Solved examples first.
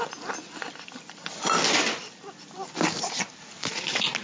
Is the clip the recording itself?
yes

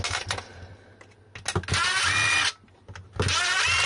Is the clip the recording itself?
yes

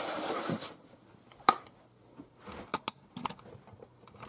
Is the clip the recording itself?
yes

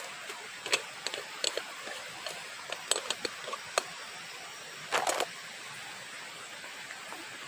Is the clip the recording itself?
yes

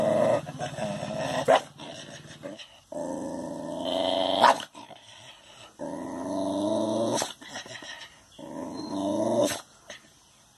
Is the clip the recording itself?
yes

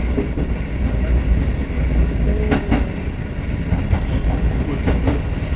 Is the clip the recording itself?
yes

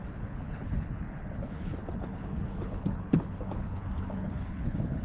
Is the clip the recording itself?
no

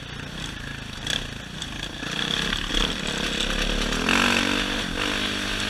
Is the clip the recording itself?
yes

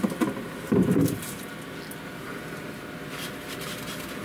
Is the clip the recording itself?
yes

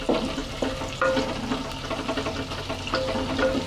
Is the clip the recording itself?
yes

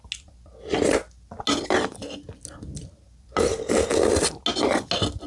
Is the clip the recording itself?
yes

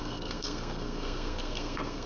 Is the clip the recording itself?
no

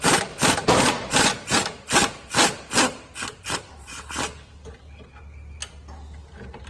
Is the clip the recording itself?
yes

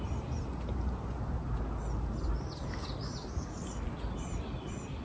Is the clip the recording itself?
yes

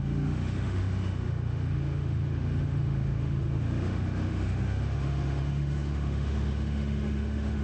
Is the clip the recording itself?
no